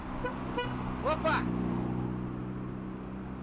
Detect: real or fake real